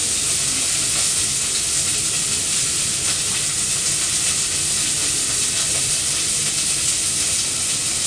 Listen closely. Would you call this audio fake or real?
real